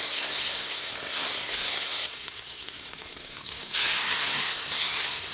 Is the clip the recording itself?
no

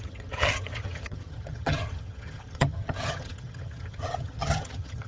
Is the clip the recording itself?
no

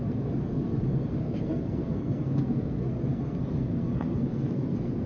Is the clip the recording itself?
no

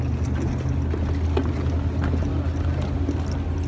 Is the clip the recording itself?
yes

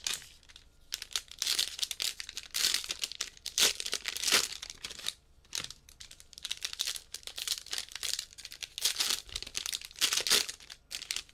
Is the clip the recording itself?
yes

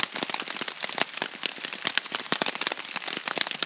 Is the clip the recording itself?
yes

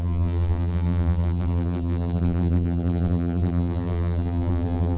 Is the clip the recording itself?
no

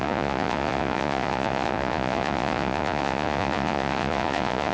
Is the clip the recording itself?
no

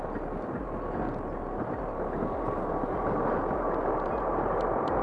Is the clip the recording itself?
yes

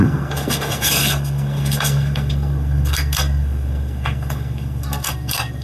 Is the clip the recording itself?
no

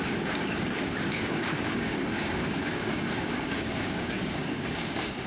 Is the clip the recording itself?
no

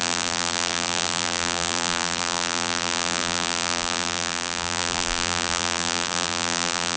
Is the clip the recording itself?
no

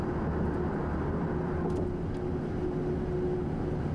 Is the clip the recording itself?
yes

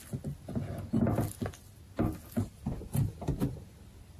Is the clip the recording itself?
yes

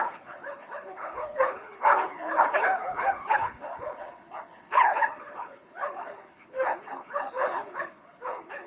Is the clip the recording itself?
no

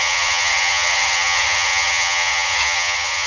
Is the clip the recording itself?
no